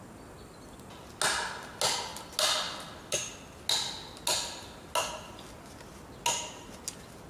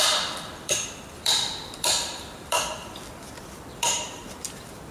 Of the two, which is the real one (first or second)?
first